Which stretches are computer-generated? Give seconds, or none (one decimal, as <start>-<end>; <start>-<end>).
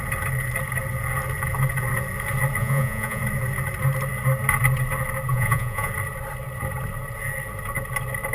2.6-3.2; 5.3-5.9